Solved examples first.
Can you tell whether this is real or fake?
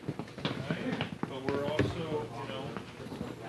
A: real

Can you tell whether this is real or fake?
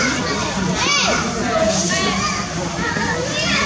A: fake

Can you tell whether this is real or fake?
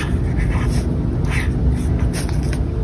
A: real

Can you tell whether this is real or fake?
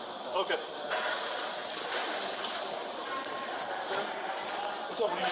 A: fake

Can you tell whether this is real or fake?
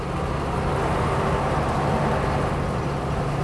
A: real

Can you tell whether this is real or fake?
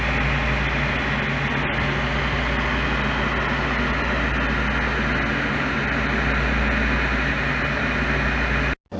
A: real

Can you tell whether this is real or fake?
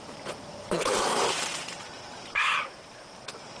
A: fake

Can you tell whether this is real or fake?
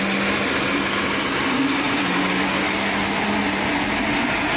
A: real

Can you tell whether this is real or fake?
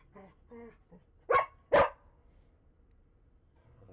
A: real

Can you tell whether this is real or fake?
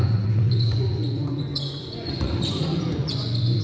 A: fake